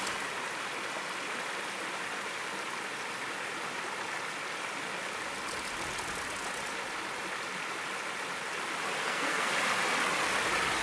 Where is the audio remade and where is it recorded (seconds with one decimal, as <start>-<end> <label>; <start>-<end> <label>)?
0.0-9.0 recorded; 9.0-9.5 remade; 9.5-10.8 recorded

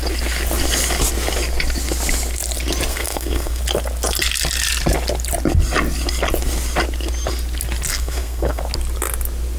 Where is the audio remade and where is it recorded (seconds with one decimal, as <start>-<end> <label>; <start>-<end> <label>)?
0.0-2.9 recorded; 2.9-3.6 remade; 3.6-7.9 recorded; 7.9-8.6 remade; 8.6-9.6 recorded